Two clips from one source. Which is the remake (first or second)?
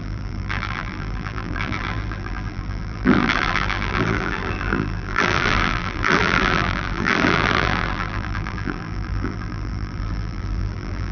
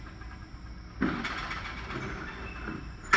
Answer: first